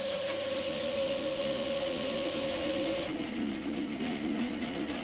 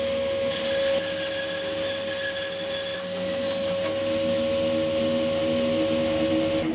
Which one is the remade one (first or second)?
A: first